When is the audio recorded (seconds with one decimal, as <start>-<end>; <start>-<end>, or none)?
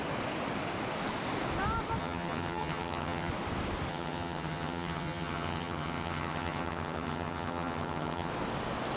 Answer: 0.0-2.0; 3.3-3.9; 8.3-9.0